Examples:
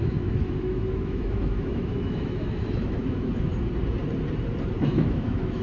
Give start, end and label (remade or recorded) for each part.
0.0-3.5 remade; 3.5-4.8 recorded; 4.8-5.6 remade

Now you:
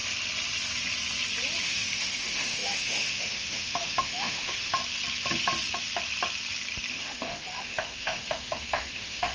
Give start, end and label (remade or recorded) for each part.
0.0-1.6 recorded; 1.6-4.8 remade; 4.8-6.9 recorded; 6.9-9.3 remade

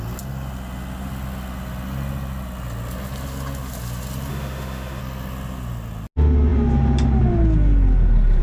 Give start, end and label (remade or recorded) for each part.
0.0-4.3 recorded; 4.3-5.0 remade; 5.0-8.4 recorded

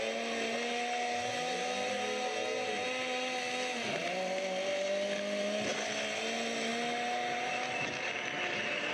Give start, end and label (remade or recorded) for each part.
0.0-8.9 recorded